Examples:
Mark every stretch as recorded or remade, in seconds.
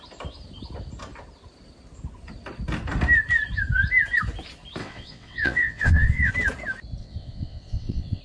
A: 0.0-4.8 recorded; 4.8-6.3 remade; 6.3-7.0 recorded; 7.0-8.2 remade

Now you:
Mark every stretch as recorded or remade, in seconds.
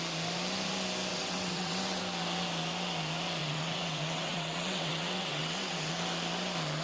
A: 0.0-1.1 recorded; 1.1-2.0 remade; 2.0-3.4 recorded; 3.4-5.9 remade; 5.9-6.8 recorded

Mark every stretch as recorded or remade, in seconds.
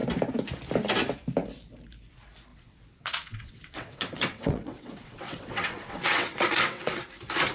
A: 0.0-2.5 recorded; 2.5-7.0 remade; 7.0-7.5 recorded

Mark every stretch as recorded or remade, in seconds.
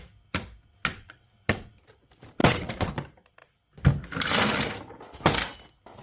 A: 0.0-0.8 recorded; 0.8-1.7 remade; 1.7-2.4 recorded; 2.4-2.9 remade; 2.9-6.0 recorded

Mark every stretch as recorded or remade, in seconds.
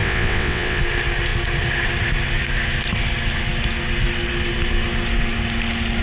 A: 0.0-0.8 remade; 0.8-6.0 recorded